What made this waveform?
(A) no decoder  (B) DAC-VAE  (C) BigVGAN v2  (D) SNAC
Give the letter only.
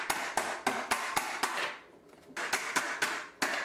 A